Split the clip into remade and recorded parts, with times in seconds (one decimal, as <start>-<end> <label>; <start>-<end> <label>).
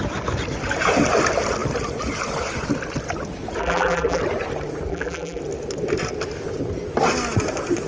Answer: 0.0-3.6 recorded; 3.6-4.2 remade; 4.2-4.9 recorded; 4.9-5.4 remade; 5.4-7.9 recorded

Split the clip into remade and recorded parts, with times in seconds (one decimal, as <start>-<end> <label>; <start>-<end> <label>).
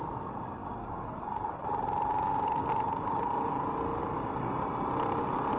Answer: 0.0-5.6 recorded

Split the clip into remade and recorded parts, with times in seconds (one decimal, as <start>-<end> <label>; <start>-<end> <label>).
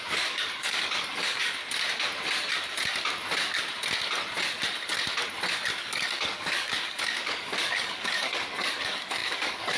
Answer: 0.0-1.6 remade; 1.6-5.7 recorded; 5.7-9.8 remade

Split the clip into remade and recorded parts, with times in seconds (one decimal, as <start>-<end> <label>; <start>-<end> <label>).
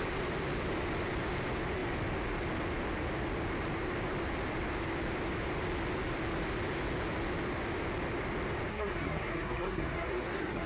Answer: 0.0-8.7 recorded; 8.7-10.7 remade